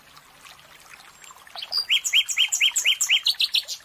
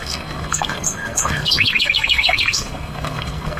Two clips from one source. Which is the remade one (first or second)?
second